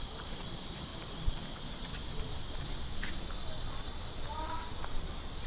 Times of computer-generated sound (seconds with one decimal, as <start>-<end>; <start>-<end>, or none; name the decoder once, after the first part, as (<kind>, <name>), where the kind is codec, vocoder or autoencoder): 0.0-1.9 (vocoder, BigVGAN v2)